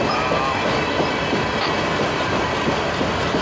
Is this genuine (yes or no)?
yes